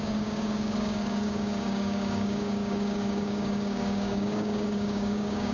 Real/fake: fake